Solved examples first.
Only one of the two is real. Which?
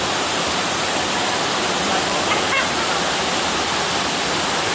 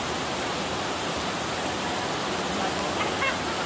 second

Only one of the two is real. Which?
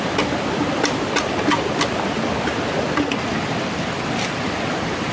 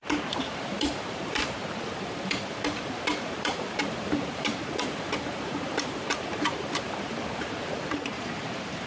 first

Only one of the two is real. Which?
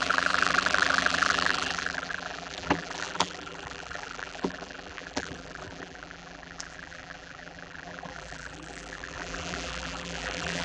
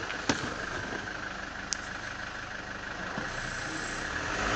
second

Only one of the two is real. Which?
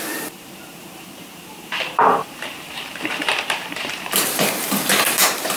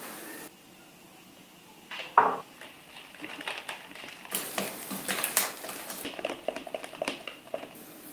second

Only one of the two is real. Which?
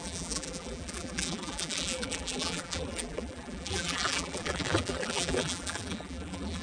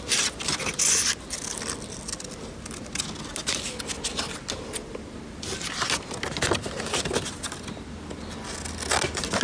second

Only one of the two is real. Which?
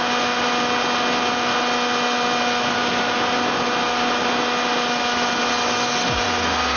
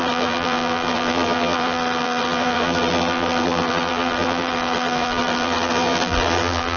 first